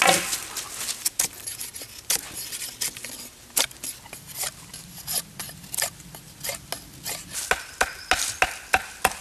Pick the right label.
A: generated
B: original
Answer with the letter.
B